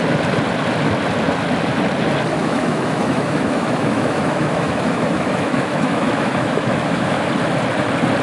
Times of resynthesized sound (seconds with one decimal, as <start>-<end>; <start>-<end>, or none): 2.4-7.3